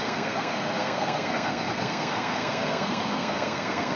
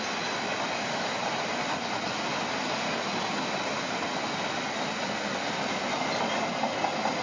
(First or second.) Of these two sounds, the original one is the second